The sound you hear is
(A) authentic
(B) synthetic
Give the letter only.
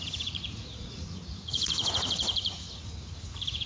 B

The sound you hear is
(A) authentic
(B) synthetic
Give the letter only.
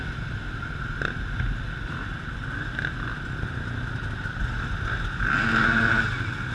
A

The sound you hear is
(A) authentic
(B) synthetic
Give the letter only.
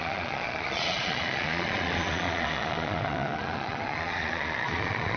B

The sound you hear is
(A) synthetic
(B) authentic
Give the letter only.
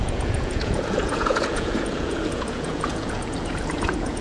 A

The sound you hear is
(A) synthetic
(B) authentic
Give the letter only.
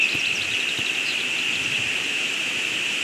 B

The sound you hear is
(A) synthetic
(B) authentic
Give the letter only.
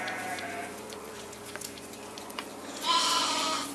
A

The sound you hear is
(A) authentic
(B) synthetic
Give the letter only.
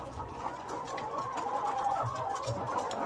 B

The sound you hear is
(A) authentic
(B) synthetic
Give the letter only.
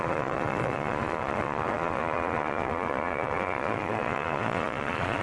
B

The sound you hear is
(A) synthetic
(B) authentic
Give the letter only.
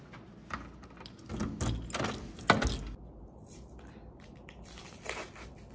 B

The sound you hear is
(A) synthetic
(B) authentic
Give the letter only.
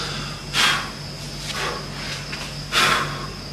B